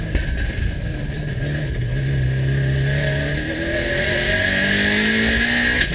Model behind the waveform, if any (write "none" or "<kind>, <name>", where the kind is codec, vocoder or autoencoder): none